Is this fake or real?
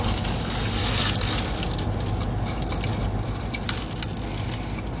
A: real